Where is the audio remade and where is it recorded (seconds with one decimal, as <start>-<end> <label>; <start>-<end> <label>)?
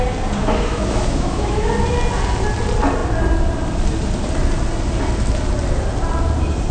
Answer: 0.0-0.4 recorded; 0.4-1.7 remade; 1.7-6.7 recorded